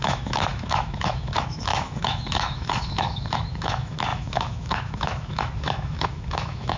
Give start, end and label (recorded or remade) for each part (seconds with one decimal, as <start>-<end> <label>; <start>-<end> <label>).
0.0-6.8 remade